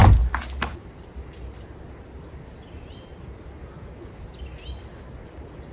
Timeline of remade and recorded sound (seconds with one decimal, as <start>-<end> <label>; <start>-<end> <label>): 0.0-5.7 recorded